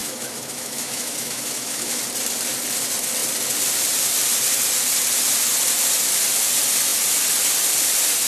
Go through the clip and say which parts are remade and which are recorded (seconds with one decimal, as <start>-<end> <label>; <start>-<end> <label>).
0.0-2.0 remade; 2.0-8.3 recorded